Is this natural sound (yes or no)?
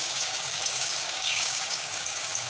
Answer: no